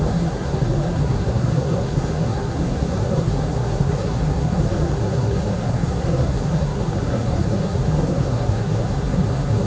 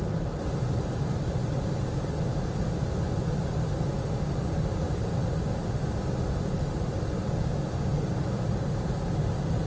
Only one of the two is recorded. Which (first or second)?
second